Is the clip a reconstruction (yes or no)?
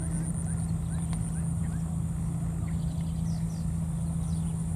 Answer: no